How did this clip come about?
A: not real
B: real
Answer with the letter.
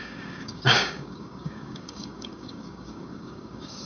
A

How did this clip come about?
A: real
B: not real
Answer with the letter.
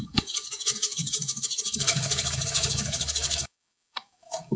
B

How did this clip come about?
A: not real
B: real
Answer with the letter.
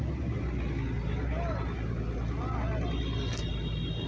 B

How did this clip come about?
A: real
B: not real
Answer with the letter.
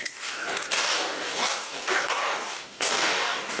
B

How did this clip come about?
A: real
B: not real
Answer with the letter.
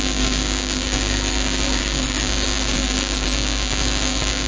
B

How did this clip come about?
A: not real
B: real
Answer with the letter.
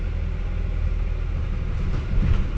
B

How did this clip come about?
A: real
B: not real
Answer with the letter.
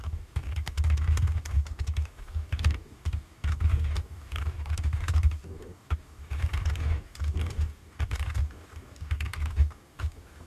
B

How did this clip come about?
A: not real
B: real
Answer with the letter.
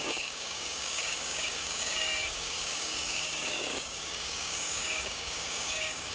A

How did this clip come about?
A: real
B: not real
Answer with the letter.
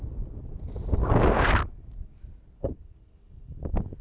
A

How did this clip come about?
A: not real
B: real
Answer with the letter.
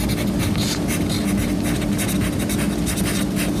B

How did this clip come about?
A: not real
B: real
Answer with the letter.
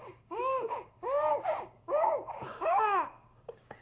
A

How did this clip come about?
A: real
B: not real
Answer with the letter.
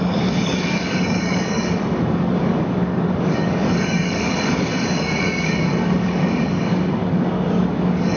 B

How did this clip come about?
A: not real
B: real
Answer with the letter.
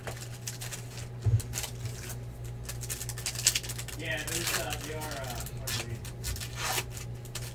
B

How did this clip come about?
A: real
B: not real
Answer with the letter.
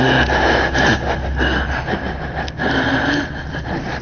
A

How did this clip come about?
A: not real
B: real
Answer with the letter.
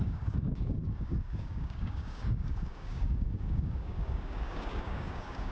A